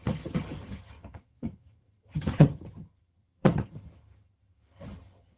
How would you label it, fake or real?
fake